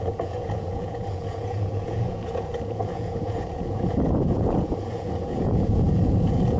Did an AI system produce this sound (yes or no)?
yes